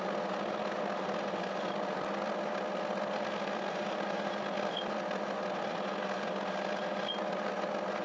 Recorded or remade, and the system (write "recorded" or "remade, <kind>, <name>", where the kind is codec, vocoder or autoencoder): recorded